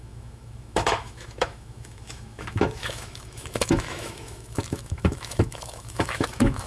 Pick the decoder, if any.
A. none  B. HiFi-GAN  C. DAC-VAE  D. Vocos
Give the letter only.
C